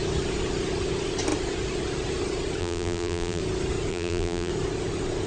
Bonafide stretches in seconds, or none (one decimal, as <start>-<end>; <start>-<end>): 0.0-2.6; 3.4-3.9; 4.5-5.3